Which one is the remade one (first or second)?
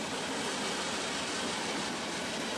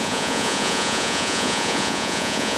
second